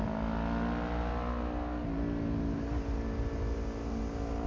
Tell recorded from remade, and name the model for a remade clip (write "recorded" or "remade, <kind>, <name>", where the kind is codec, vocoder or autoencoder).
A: recorded